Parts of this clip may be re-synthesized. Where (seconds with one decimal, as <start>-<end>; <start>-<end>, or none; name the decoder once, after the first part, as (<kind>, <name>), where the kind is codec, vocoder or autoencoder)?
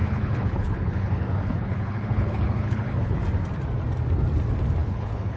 0.0-3.2 (codec, HILCodec); 4.8-5.4